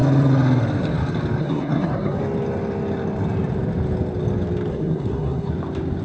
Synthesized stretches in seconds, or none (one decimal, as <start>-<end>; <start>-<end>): 1.4-2.2; 4.7-5.5